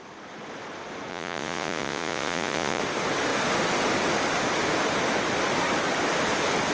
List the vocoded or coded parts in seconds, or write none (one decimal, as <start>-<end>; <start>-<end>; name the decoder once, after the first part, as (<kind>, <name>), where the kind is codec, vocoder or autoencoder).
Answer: 1.1-2.8 (vocoder, Vocos)